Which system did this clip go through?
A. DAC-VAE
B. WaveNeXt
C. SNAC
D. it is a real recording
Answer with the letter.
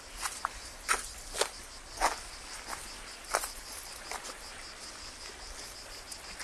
D